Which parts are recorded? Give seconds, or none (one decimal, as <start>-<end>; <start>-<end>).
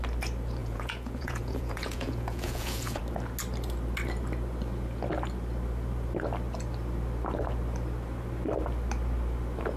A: 0.0-0.6; 3.0-9.8